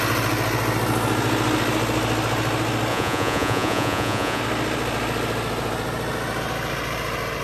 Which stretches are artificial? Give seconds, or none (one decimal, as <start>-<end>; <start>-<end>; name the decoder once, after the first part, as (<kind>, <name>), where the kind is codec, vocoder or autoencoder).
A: 2.9-4.4 (vocoder, Vocos)